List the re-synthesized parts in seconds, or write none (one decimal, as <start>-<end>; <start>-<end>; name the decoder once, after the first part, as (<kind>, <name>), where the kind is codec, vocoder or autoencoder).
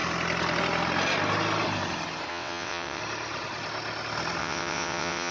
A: 2.3-3.0 (vocoder, WaveNeXt); 4.4-5.3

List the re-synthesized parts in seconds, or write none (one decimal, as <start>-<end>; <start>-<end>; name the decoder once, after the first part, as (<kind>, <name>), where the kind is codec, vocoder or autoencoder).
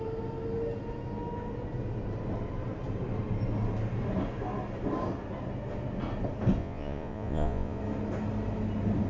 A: 6.6-7.8 (vocoder, Vocos)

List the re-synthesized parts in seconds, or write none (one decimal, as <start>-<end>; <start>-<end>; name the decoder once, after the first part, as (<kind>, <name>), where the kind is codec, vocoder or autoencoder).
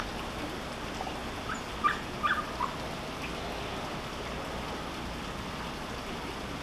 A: none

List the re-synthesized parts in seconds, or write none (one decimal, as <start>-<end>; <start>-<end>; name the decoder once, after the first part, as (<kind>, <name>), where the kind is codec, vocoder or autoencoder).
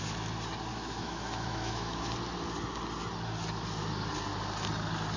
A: 0.7-2.1 (autoencoder, DAC-VAE)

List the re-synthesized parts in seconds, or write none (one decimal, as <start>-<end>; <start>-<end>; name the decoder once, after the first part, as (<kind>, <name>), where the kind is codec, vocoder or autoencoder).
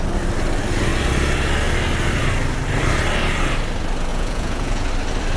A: 4.1-4.9 (vocoder, Vocos)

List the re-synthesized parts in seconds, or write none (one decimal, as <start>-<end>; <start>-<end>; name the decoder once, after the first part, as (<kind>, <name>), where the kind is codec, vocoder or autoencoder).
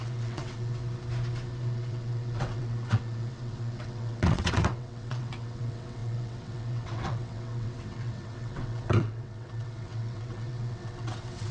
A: 0.0-0.8 (vocoder, WaveNeXt); 1.6-11.5